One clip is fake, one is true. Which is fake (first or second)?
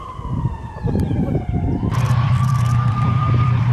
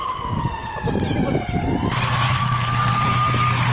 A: first